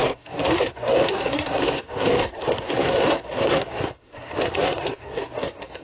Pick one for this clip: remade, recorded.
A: remade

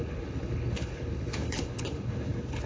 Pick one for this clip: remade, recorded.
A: remade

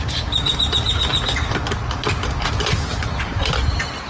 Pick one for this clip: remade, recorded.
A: recorded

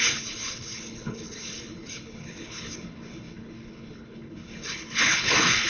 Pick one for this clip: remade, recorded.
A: remade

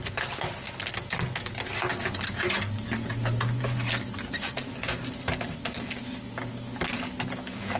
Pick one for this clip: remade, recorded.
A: recorded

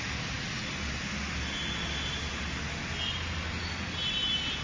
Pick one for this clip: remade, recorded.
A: recorded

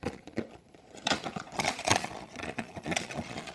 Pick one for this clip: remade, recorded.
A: remade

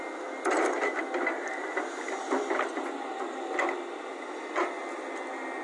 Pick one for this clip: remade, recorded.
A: recorded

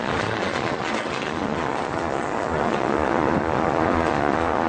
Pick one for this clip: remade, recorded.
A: remade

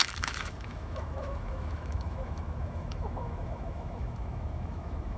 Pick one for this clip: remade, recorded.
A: remade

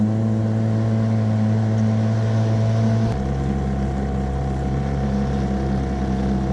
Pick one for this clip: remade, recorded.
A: recorded